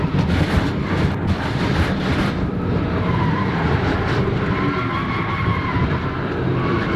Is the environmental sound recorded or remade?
recorded